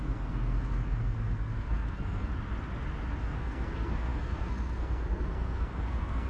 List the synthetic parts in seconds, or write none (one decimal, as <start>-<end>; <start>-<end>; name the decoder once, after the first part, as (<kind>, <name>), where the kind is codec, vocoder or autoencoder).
0.0-2.3 (codec, SNAC); 3.2-6.3